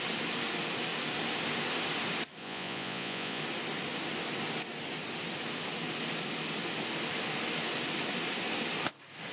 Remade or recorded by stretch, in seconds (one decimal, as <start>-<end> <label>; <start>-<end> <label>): 0.0-2.4 recorded; 2.4-3.4 remade; 3.4-9.3 recorded